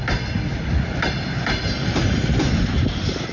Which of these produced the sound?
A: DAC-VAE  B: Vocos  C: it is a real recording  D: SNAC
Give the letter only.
C